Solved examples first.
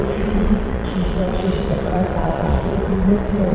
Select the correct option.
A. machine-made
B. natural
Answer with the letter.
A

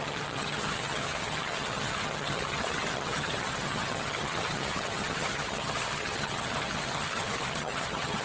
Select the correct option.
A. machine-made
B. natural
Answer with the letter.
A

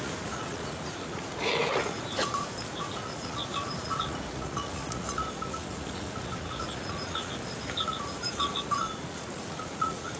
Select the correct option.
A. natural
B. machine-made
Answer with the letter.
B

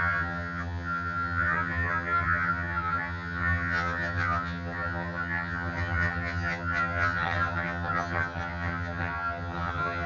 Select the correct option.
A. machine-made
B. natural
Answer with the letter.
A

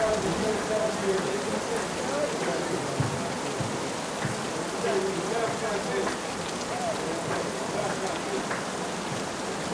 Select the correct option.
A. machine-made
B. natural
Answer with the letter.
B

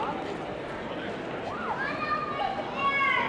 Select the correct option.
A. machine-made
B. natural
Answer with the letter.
B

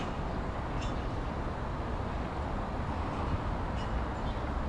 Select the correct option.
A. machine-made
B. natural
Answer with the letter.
B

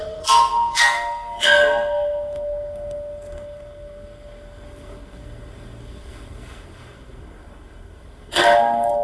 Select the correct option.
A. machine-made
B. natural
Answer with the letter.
A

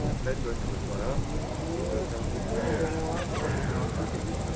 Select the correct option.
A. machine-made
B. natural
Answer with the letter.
B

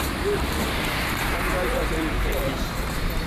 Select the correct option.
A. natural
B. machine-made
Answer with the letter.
B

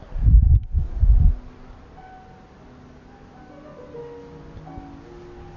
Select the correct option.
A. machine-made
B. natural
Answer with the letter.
B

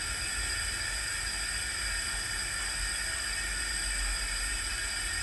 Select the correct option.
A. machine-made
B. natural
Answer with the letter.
B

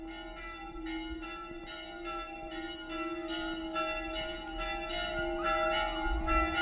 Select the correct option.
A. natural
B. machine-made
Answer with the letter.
A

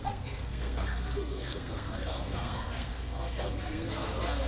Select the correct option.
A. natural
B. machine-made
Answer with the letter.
B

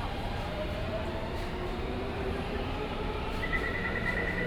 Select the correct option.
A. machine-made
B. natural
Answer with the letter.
A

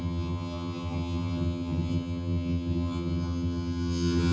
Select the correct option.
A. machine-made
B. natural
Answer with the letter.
A